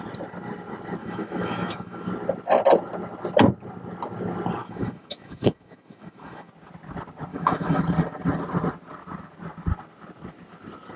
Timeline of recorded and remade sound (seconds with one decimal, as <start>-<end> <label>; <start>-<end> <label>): 0.0-1.0 recorded; 1.0-2.1 remade; 2.1-4.6 recorded; 4.6-6.5 remade; 6.5-7.3 recorded; 7.3-7.8 remade; 7.8-11.0 recorded